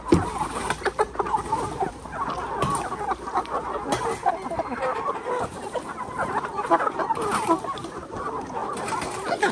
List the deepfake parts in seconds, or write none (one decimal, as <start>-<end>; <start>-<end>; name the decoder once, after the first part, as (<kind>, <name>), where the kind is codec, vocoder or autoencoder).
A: none